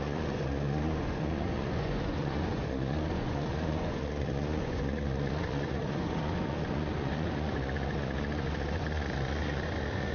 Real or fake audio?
fake